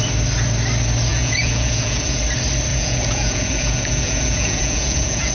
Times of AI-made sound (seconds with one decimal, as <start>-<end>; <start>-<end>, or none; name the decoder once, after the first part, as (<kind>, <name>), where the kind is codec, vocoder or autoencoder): 1.1-2.2 (vocoder, Vocos); 2.7-5.3